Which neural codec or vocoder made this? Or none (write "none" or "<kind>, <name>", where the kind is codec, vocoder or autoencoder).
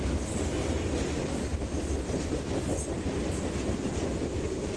none